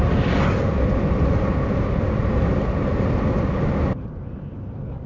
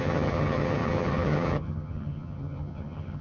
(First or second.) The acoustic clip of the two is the first